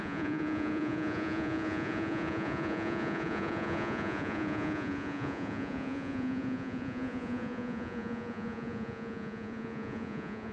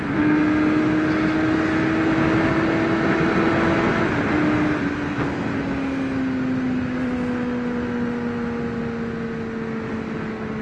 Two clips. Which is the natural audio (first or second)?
second